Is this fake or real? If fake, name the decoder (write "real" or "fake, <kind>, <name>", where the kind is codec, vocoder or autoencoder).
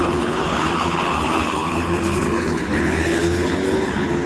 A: fake, codec, HILCodec